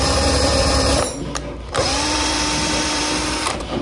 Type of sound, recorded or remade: remade